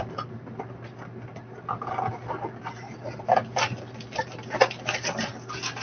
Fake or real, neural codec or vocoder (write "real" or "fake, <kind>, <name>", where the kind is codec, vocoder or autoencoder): real